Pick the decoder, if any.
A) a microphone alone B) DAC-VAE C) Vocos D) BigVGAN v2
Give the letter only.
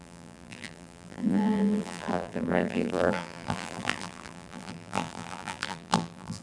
D